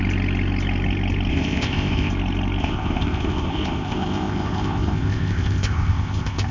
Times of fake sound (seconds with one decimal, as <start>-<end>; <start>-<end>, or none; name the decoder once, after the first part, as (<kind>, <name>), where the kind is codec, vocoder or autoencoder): 1.3-2.1 (codec, ZipCodec); 2.6-6.5